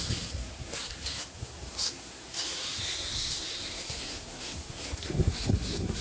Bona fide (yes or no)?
no